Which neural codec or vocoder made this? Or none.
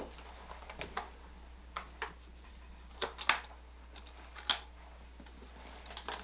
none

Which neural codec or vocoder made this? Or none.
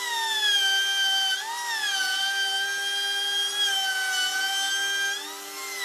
none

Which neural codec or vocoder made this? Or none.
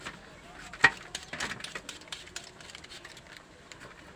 none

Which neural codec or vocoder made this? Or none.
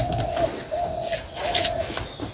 none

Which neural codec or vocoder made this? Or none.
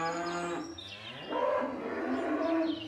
none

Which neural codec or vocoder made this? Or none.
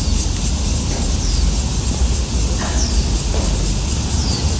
none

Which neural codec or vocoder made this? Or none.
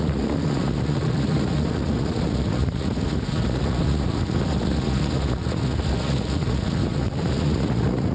vocoder, Vocos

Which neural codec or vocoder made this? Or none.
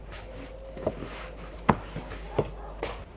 none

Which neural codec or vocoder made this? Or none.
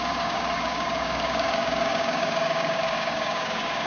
codec, DAC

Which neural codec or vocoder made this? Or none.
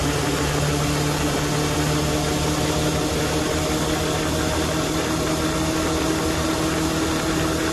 none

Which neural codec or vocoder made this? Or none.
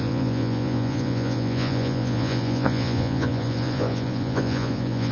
vocoder, Vocos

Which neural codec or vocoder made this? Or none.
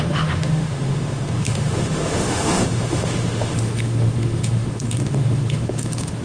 autoencoder, DAC-VAE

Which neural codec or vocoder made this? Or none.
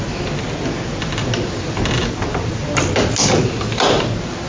none